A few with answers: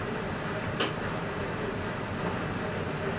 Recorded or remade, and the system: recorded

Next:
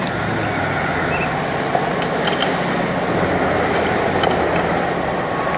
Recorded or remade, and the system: recorded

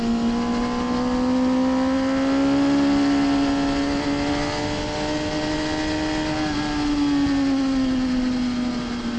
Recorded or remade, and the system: recorded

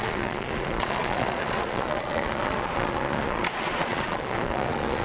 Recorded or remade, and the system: remade, vocoder, Vocos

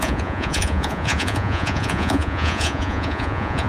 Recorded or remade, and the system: remade, vocoder, Vocos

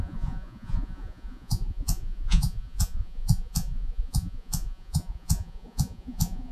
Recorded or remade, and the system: remade, vocoder, Vocos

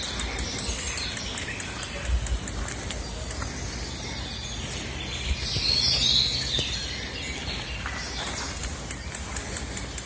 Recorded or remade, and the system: recorded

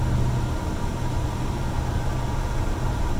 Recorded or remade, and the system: recorded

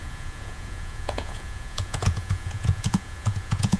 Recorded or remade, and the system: remade, vocoder, Vocos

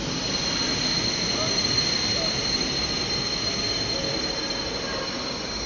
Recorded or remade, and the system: recorded